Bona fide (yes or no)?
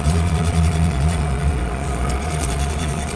no